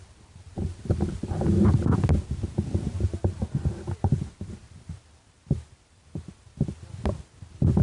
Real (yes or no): yes